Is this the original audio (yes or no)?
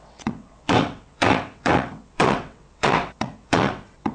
no